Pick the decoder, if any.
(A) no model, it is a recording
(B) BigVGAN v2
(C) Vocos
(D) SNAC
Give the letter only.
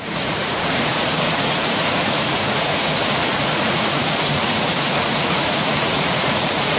C